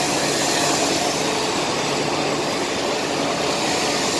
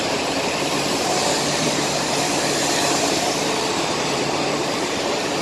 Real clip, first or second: first